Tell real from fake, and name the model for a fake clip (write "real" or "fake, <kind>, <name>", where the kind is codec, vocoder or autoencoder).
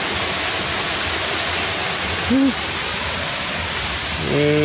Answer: real